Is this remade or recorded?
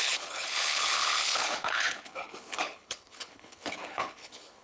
remade